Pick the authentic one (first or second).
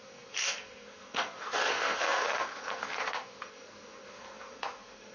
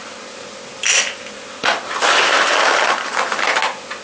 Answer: second